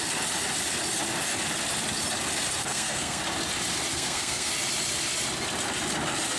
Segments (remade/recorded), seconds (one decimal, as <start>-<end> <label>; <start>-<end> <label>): 0.0-2.6 recorded; 2.6-3.2 remade; 3.2-3.9 recorded; 3.9-4.5 remade; 4.5-6.4 recorded